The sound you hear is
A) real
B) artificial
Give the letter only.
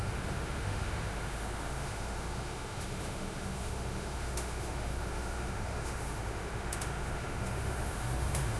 B